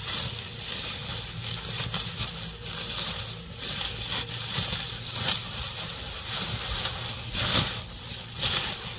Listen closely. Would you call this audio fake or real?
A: real